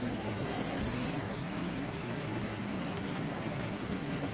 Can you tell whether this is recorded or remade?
remade